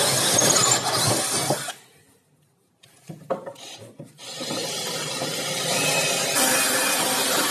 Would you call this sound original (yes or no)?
yes